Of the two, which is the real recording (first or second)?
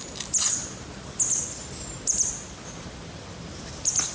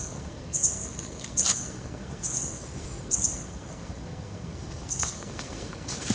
first